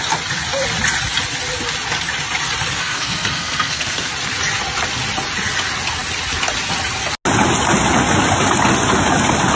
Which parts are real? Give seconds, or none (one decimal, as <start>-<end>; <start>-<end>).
0.0-2.8; 4.1-9.6